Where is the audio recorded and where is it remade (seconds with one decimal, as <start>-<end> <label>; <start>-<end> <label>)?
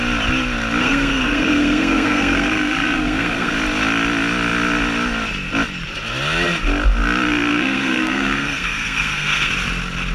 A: 0.0-0.8 recorded; 0.8-3.5 remade; 3.5-7.5 recorded; 7.5-9.5 remade; 9.5-10.1 recorded